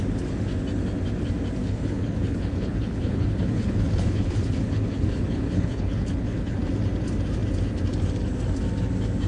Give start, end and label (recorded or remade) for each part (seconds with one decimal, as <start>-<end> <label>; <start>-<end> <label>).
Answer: 0.0-1.6 recorded; 1.6-6.6 remade; 6.6-9.3 recorded